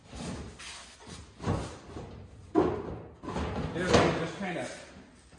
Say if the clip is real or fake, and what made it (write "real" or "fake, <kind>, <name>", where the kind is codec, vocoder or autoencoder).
real